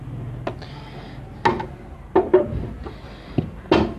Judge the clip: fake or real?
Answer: real